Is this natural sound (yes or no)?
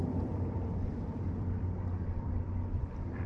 no